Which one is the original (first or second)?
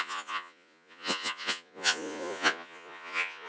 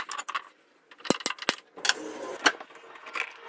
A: second